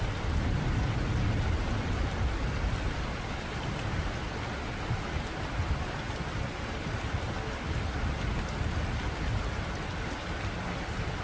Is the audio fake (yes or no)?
no